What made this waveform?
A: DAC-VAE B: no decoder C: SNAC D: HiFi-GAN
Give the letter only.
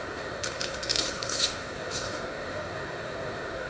C